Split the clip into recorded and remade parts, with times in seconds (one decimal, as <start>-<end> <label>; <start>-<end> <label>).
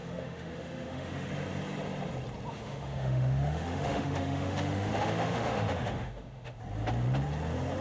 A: 0.0-1.3 remade; 1.3-2.5 recorded; 2.5-6.6 remade; 6.6-7.8 recorded